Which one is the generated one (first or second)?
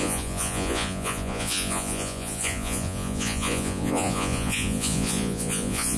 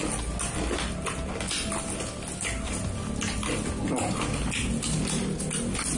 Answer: first